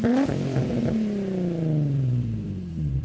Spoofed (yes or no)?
yes